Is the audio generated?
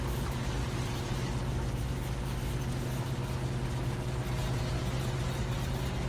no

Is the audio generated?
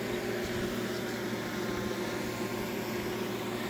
no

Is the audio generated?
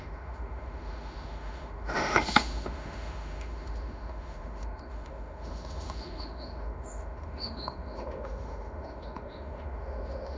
yes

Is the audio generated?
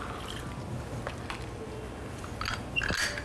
no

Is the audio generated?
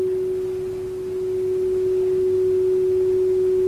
no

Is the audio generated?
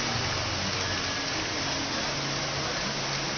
no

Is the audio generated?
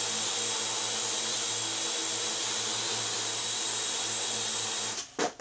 no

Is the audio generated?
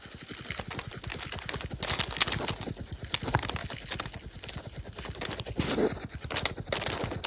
no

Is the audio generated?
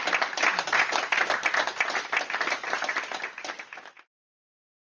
no